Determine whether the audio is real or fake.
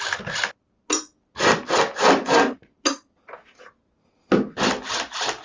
real